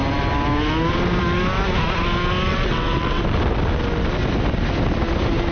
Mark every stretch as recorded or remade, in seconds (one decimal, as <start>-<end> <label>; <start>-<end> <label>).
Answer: 0.0-2.5 recorded; 2.5-3.2 remade; 3.2-5.5 recorded